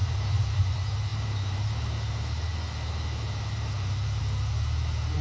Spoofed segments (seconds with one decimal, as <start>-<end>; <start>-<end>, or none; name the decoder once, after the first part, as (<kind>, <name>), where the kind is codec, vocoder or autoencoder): 0.0-0.6 (vocoder, BigVGAN v2); 1.1-4.2